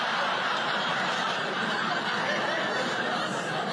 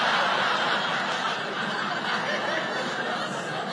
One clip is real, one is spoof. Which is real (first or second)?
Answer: second